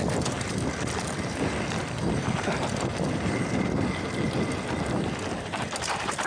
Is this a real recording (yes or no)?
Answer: yes